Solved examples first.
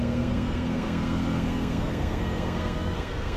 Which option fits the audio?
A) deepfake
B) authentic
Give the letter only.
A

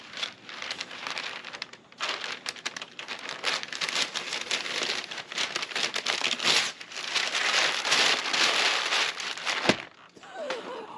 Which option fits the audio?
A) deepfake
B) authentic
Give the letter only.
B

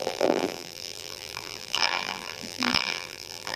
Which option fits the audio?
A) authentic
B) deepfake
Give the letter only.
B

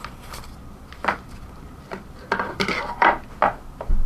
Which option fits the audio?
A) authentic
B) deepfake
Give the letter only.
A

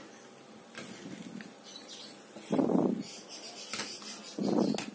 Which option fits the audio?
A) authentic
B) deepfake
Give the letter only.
A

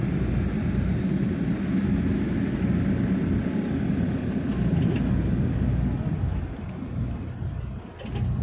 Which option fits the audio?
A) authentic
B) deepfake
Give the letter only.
A